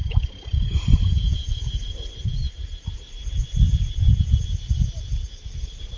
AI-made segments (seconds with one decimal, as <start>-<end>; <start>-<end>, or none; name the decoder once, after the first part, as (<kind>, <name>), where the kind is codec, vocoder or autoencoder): none